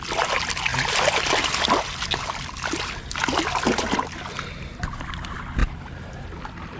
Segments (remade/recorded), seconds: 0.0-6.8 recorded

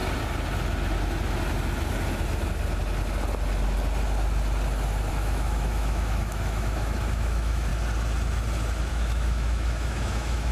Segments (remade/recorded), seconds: 0.0-5.1 recorded; 5.1-7.7 remade; 7.7-8.9 recorded; 8.9-10.5 remade

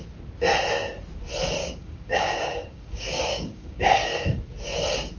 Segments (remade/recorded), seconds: 0.0-1.6 recorded; 1.6-4.5 remade; 4.5-5.2 recorded